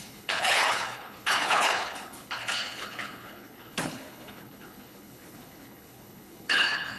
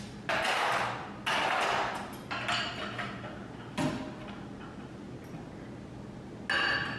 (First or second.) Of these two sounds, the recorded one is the second